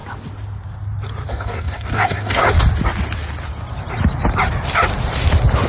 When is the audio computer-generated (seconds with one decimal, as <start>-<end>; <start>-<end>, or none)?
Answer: 1.3-2.4